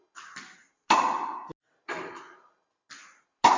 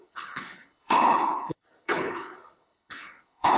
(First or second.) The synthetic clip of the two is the second